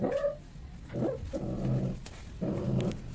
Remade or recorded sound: recorded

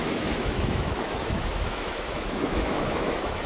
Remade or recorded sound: remade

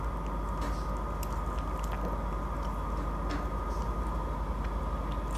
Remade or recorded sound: recorded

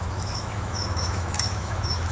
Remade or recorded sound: remade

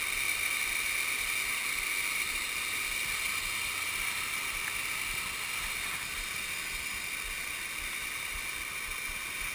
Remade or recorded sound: recorded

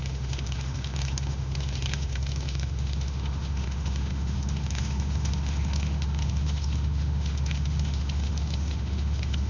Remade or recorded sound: remade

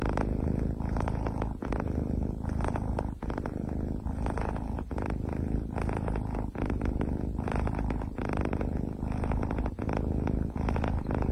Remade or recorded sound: recorded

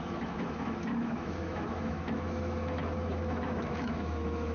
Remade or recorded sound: remade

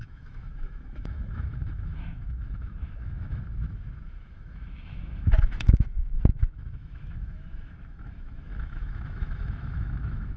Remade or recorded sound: remade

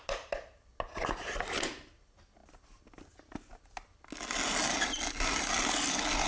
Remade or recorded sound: recorded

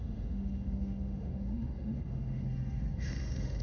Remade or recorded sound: remade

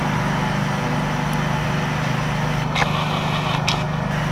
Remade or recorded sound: recorded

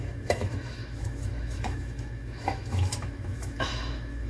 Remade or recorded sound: remade